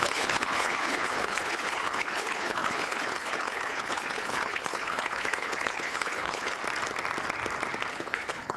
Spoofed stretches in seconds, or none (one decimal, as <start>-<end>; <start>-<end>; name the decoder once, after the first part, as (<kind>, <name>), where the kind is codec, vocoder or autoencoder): 0.0-6.6 (codec, HILCodec); 7.9-8.6